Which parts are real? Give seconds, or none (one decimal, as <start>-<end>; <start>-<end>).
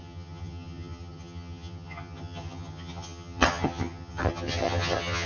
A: none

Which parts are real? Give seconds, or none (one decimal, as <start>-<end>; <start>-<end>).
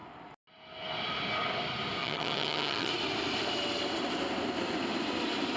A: 0.0-2.0; 2.9-5.6